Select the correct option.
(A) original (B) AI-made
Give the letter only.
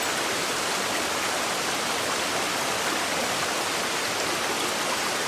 A